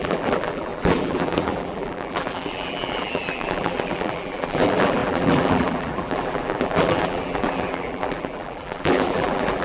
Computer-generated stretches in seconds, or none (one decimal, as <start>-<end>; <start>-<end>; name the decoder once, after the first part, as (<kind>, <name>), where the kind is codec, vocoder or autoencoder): 0.0-9.6 (vocoder, BigVGAN v2)